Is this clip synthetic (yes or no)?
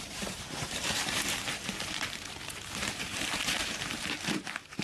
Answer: yes